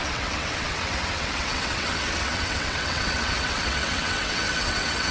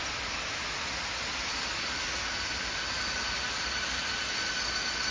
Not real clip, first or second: first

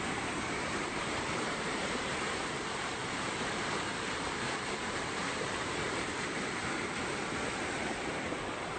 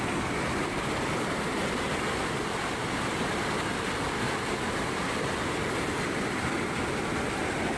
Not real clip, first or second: first